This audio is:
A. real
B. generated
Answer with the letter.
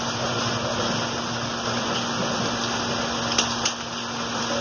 A